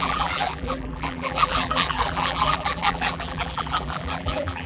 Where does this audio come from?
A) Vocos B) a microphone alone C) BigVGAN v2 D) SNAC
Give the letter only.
C